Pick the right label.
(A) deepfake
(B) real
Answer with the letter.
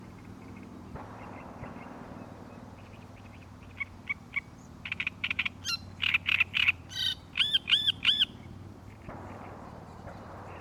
A